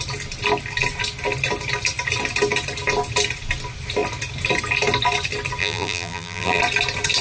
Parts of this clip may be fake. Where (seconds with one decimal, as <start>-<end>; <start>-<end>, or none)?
5.6-6.6